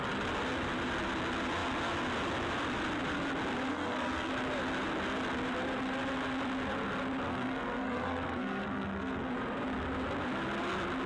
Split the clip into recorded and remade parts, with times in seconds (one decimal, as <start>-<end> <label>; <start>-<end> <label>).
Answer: 0.0-3.7 recorded; 3.7-4.3 remade; 4.3-7.3 recorded; 7.3-9.3 remade; 9.3-11.1 recorded